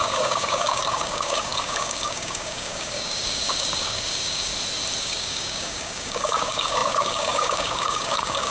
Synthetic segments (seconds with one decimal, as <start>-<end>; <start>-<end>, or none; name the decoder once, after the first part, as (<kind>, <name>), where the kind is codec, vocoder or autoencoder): 0.0-4.5 (codec, DAC); 5.0-8.5